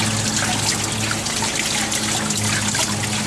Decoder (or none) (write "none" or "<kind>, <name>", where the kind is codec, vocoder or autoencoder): none